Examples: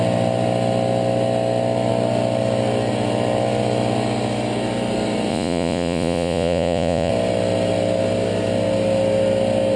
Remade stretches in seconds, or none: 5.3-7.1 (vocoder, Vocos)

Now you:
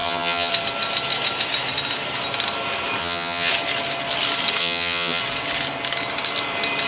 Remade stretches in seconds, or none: 0.0-0.5 (vocoder, HiFi-GAN); 3.0-3.5; 4.6-5.2

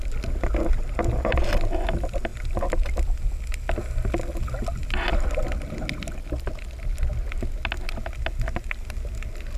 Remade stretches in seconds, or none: none